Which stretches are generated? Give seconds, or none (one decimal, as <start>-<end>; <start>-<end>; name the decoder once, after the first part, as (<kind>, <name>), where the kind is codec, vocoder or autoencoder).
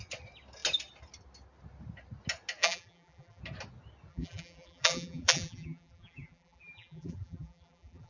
2.6-3.4 (vocoder, BigVGAN v2); 4.1-8.1